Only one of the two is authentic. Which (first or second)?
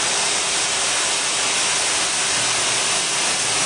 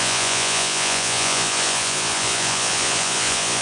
first